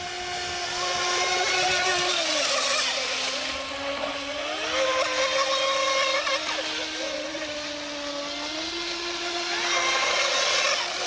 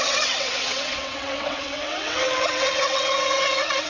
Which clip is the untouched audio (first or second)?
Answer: first